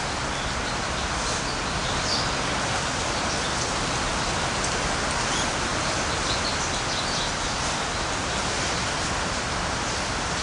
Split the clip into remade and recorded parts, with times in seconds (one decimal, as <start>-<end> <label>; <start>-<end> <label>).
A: 0.0-10.4 recorded